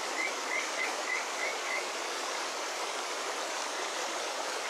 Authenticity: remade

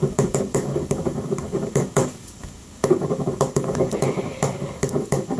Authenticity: remade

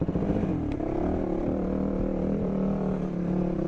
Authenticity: recorded